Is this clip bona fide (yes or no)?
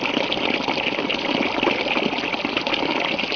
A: yes